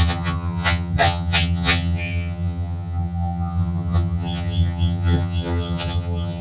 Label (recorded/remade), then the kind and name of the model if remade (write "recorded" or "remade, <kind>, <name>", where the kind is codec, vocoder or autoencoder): remade, vocoder, HiFi-GAN